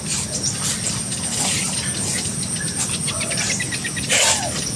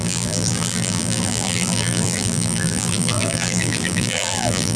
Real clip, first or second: first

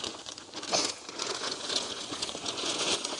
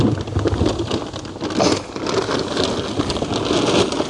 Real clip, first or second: second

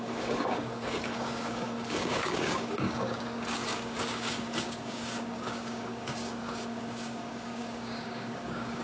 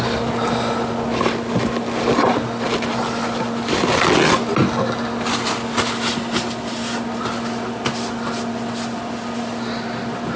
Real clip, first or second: second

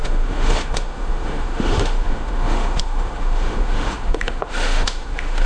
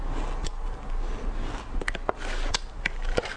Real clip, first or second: second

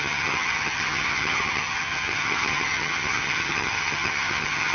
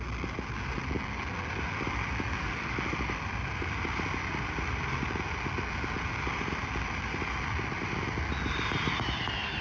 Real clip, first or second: second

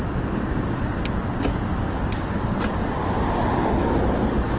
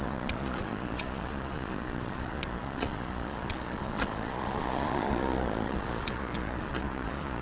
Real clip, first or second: first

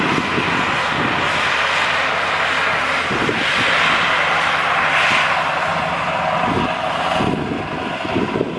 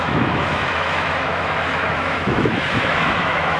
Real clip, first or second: first